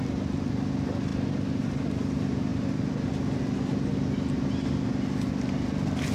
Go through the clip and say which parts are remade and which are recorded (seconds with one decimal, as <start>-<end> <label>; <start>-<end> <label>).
0.0-6.1 recorded